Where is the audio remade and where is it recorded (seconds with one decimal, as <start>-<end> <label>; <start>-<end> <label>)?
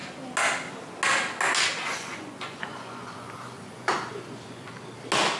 0.0-1.9 recorded; 1.9-4.8 remade; 4.8-5.4 recorded